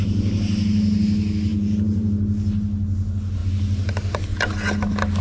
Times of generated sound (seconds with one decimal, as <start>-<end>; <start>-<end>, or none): 1.5-2.1